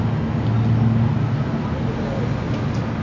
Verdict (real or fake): real